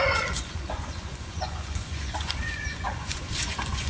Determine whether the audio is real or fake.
fake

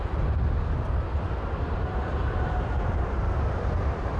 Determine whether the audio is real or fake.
real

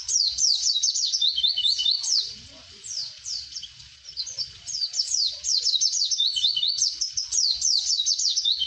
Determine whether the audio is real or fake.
fake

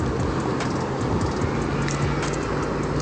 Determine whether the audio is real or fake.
real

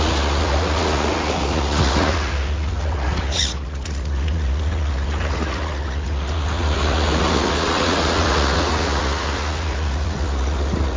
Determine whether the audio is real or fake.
fake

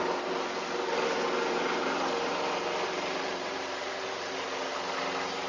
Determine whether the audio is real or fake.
real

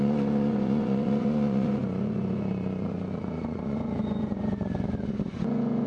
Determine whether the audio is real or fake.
fake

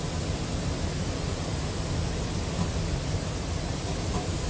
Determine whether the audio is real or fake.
real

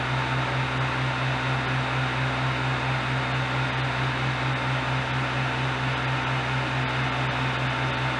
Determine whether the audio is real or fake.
real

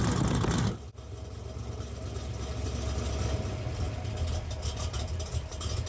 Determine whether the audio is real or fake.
real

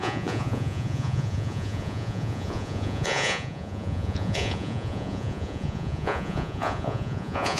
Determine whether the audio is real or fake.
fake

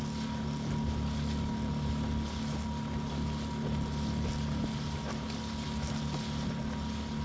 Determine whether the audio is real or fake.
real